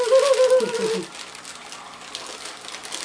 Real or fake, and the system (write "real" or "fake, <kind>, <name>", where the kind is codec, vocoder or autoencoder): real